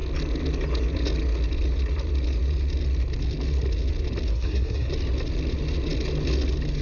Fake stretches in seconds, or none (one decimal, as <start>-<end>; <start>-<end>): 4.3-4.9